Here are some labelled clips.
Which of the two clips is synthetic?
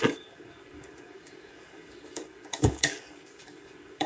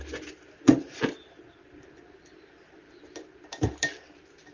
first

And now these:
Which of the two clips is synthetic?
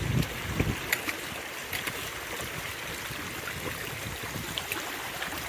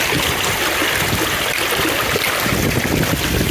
second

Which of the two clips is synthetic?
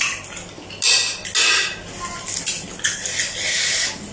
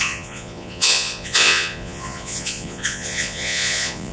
second